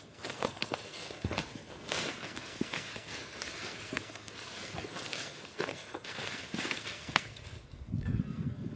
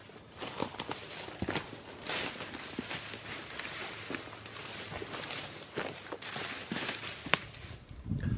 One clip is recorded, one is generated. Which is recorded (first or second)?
second